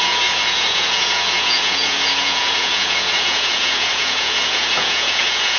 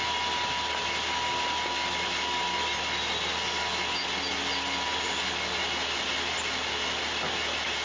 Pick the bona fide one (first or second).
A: second